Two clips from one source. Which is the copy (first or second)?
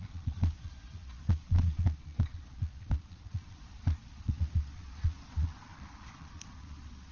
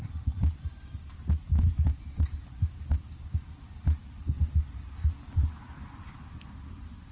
first